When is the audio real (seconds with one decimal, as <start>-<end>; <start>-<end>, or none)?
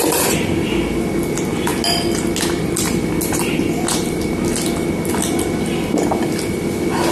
0.0-7.1